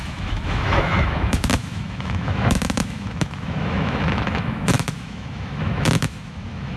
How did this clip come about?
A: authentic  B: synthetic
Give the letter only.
B